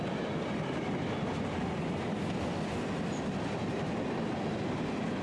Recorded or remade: recorded